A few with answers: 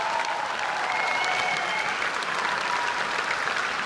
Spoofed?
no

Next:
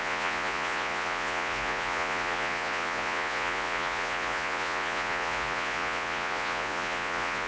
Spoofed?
yes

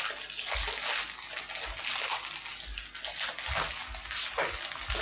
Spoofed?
no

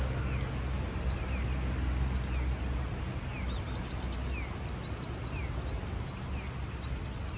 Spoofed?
no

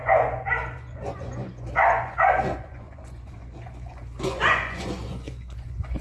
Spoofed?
yes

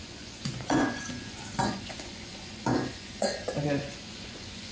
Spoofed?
yes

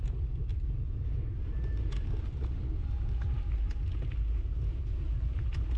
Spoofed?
no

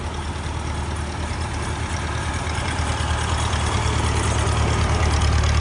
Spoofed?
no